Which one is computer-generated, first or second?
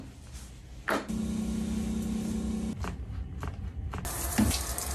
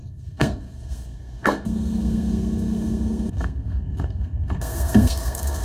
second